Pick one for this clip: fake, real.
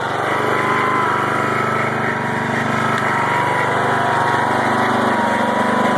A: real